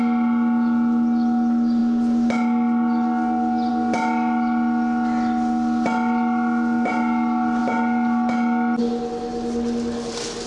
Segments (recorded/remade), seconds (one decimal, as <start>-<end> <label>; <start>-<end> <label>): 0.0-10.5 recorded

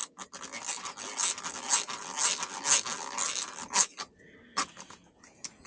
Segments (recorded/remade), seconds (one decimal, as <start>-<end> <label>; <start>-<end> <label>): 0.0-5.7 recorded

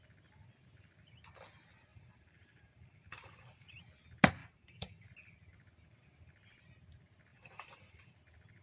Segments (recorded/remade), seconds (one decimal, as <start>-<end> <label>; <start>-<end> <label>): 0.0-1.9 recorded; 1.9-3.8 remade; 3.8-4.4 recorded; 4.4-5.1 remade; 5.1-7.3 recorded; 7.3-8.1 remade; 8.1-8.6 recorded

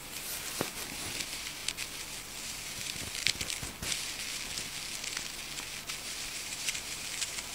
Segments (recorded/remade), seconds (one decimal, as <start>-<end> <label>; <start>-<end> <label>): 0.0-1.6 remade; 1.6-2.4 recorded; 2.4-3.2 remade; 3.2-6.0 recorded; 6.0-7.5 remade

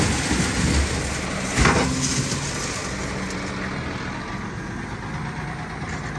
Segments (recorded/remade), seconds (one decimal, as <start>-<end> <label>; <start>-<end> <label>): 0.0-6.2 recorded

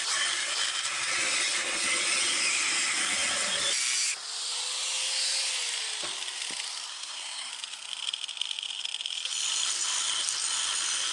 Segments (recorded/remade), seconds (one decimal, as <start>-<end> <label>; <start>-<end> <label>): 0.0-6.9 recorded; 6.9-7.5 remade; 7.5-11.1 recorded

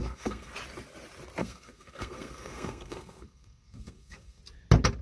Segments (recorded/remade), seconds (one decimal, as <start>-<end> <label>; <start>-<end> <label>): 0.0-0.5 remade; 0.5-1.4 recorded; 1.4-4.4 remade; 4.4-5.0 recorded